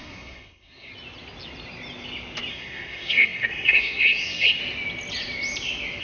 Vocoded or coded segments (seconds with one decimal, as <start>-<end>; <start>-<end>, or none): 0.0-0.9; 2.5-4.6